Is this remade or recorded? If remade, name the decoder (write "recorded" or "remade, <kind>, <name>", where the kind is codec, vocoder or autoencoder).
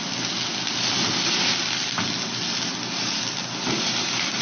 recorded